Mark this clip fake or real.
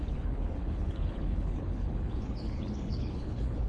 fake